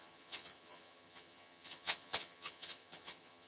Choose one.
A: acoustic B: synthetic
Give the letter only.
B